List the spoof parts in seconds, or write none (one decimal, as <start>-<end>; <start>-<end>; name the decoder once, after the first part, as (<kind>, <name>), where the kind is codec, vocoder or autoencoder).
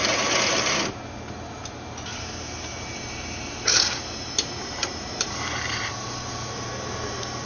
2.1-5.9 (vocoder, BigVGAN v2)